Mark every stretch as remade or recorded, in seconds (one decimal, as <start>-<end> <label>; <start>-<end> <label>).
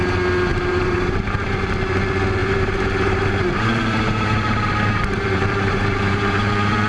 0.0-0.5 recorded; 0.5-1.6 remade; 1.6-2.4 recorded; 2.4-6.5 remade; 6.5-6.9 recorded